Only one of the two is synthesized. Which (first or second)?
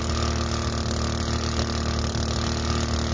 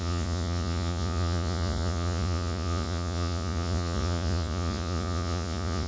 second